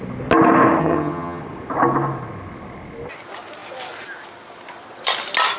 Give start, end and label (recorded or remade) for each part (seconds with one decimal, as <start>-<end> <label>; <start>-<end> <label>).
0.0-0.8 recorded; 0.8-1.4 remade; 1.4-5.6 recorded